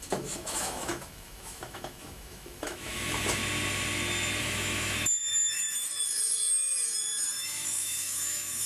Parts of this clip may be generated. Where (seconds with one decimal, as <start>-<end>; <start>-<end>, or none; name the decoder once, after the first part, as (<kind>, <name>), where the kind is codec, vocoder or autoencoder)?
0.0-3.4 (autoencoder, DAC-VAE); 4.4-8.7